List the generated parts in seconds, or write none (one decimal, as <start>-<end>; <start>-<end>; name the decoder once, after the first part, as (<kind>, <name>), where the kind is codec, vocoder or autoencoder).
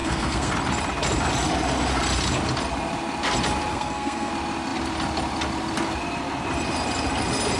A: 0.0-0.5 (codec, SNAC); 3.7-4.3